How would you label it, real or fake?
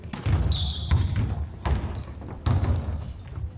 real